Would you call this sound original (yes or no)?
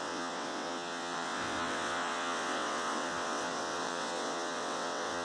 no